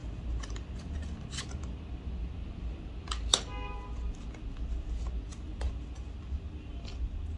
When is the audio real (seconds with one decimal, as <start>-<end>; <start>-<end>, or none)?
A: 0.0-7.4